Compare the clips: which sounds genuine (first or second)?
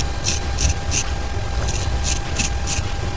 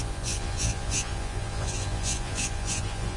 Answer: first